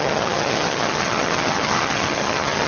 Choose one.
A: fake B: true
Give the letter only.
A